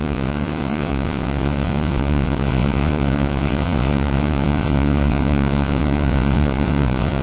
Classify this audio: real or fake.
fake